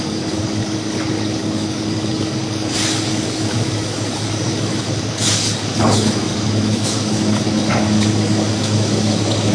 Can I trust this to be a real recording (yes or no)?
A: no